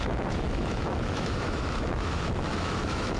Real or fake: fake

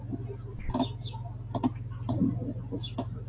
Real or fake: real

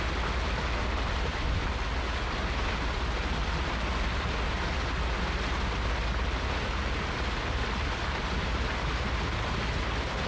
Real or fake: real